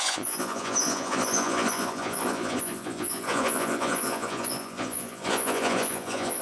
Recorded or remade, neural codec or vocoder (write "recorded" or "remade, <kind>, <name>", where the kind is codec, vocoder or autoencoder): remade, vocoder, Vocos